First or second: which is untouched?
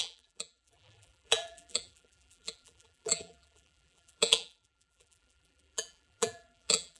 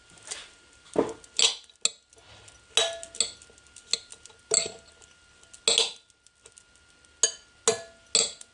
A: second